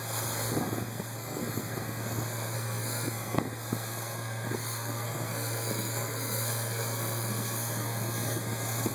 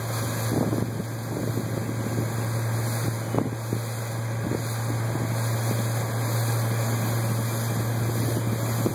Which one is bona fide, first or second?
second